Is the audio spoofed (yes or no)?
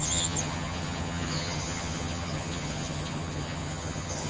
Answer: yes